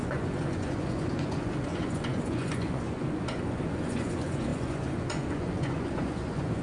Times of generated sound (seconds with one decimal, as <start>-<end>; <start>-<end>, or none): 0.0-6.6